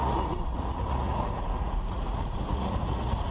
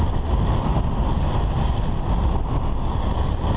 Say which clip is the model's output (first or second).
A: first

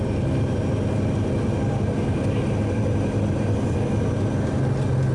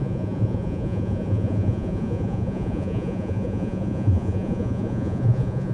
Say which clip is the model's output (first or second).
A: second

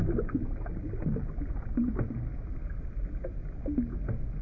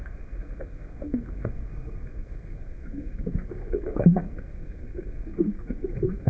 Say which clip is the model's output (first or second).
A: second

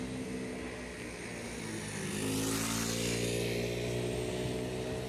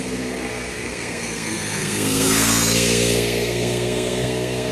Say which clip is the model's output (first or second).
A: second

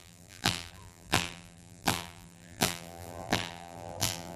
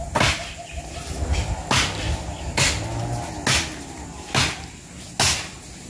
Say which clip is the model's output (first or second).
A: first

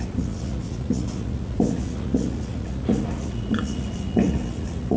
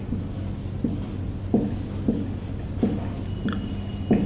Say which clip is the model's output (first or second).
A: first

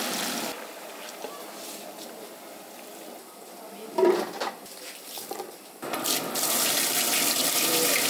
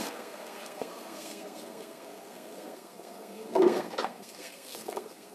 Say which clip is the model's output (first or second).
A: second